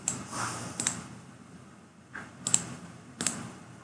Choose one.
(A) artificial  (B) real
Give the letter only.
B